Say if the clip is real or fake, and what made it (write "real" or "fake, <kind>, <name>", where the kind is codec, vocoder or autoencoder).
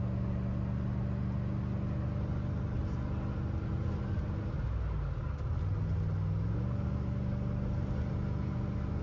real